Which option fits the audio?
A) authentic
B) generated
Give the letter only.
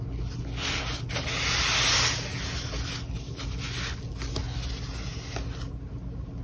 A